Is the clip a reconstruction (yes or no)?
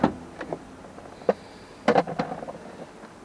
no